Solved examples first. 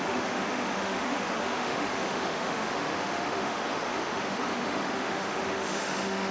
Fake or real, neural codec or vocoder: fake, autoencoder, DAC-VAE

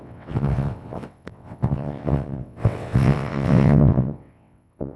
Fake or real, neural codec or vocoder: fake, vocoder, WaveNeXt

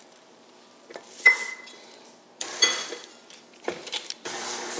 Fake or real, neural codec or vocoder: fake, vocoder, BigVGAN v2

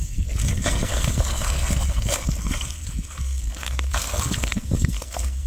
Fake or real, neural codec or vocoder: fake, codec, SNAC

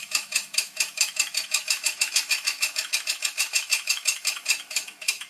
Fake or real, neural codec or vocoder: fake, autoencoder, DAC-VAE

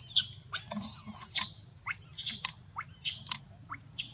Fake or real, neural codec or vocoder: real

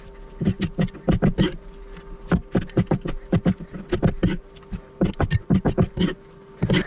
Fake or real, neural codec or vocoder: real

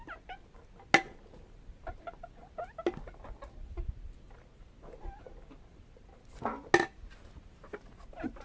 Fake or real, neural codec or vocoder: real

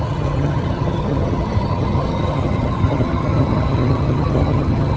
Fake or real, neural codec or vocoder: fake, vocoder, HiFi-GAN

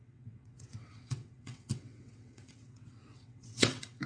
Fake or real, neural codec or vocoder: fake, vocoder, WaveNeXt